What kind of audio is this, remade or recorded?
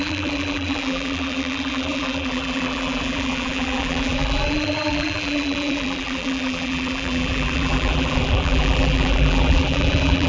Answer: remade